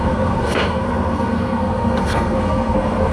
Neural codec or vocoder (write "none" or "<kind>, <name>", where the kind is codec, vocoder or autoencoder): codec, SNAC